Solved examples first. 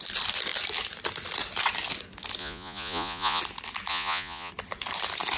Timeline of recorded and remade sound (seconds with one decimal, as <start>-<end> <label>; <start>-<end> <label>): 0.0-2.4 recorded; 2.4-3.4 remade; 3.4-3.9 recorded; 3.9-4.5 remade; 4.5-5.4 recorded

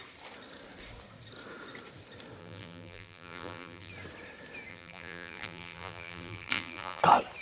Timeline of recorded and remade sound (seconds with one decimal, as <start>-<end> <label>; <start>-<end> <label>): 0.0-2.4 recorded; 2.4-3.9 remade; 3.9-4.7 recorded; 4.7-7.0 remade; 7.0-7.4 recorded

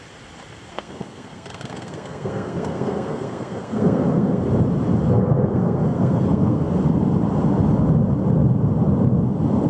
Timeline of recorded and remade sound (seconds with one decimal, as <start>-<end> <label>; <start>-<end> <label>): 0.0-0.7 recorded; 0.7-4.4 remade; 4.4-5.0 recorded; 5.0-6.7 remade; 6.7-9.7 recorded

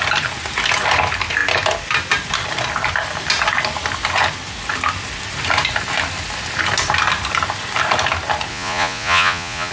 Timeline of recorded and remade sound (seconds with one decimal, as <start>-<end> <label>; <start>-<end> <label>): 0.0-8.5 recorded; 8.5-9.7 remade